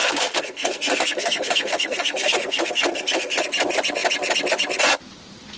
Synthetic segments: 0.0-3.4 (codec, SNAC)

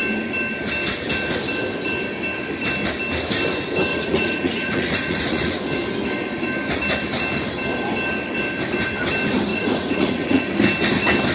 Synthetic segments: 3.9-5.6 (vocoder, Vocos); 9.5-10.4